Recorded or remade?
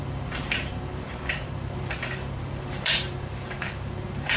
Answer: remade